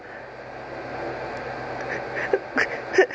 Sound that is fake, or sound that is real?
real